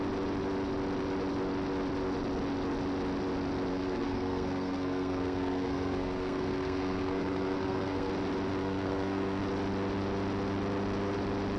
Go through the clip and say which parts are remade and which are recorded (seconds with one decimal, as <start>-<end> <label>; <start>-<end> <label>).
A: 0.0-3.7 recorded; 3.7-8.1 remade; 8.1-8.6 recorded; 8.6-9.4 remade; 9.4-11.6 recorded